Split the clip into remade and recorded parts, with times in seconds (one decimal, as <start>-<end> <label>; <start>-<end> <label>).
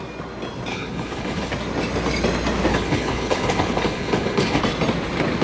0.0-0.7 recorded; 0.7-1.5 remade; 1.5-2.7 recorded; 2.7-4.6 remade; 4.6-5.4 recorded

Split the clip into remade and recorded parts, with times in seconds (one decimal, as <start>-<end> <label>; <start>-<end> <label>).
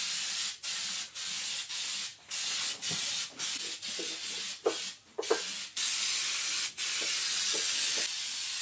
0.0-8.6 recorded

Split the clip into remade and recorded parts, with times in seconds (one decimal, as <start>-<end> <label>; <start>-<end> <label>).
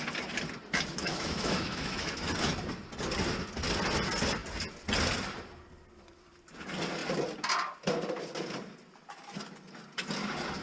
0.0-0.9 recorded; 0.9-2.3 remade; 2.3-10.6 recorded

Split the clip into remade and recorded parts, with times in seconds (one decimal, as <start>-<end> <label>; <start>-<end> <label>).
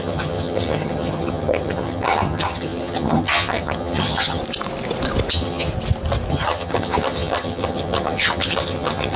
0.0-4.4 remade; 4.4-5.3 recorded; 5.3-5.7 remade; 5.7-6.3 recorded; 6.3-9.2 remade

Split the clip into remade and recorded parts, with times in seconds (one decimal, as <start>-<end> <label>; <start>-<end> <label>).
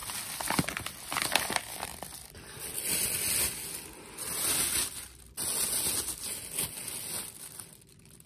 0.0-8.3 recorded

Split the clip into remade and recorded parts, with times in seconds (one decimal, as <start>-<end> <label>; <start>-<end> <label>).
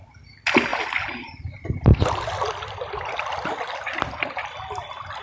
0.0-0.7 remade; 0.7-1.3 recorded; 1.3-5.2 remade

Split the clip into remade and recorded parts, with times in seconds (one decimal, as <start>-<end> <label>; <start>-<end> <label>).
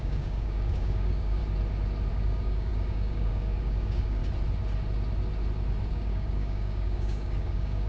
0.0-1.4 remade; 1.4-2.1 recorded; 2.1-4.2 remade; 4.2-5.9 recorded; 5.9-7.9 remade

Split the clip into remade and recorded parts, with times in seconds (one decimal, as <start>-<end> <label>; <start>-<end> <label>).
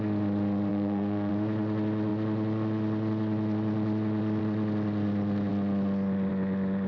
0.0-0.7 recorded; 0.7-1.3 remade; 1.3-6.9 recorded